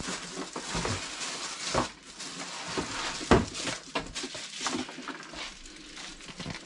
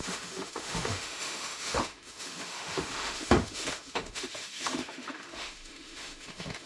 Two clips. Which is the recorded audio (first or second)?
first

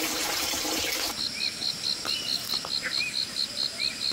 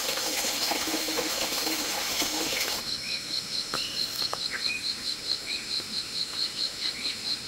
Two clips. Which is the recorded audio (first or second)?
first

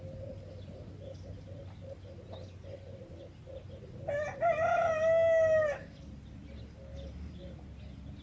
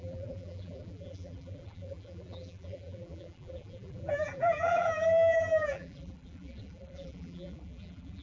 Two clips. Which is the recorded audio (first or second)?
first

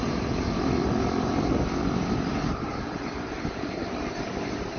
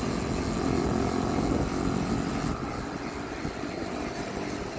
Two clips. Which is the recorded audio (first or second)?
second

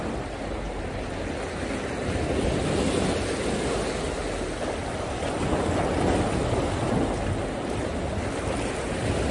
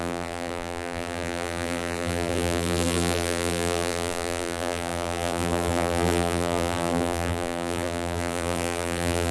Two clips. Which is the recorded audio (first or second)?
first